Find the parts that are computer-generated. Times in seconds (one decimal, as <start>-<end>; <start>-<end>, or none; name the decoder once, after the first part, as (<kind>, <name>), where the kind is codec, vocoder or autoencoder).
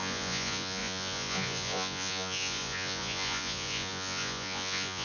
0.0-5.0 (vocoder, Vocos)